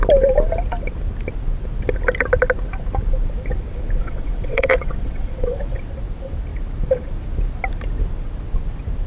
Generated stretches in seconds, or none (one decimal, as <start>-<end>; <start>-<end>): 4.0-5.8